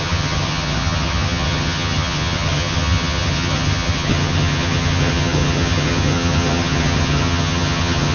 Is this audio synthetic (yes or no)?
yes